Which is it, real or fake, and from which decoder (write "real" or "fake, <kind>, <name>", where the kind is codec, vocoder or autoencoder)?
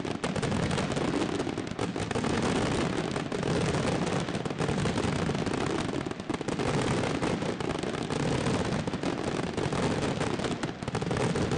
real